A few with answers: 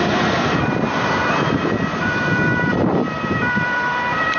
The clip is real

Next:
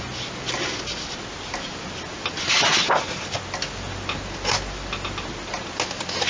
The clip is real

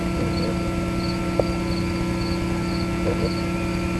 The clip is real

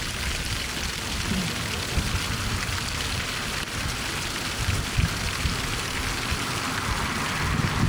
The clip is real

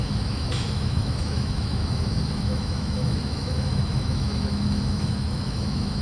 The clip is fake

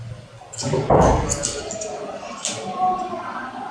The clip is real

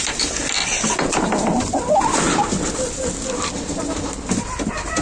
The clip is real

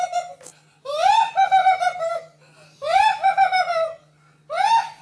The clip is real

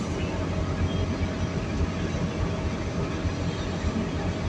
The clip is real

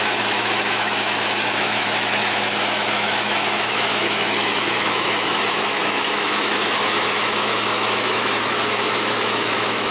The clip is fake